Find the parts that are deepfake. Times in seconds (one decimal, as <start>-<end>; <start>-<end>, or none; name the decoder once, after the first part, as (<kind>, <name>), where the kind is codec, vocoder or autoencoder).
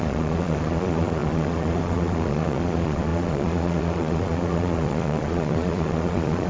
0.0-6.5 (vocoder, Vocos)